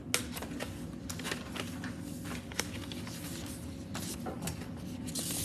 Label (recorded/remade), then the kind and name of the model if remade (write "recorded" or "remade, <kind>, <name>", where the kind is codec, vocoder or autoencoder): recorded